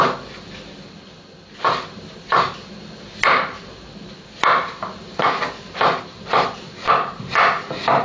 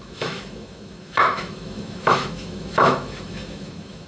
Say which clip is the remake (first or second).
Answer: second